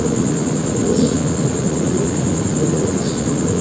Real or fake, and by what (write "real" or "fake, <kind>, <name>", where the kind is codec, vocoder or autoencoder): fake, vocoder, Vocos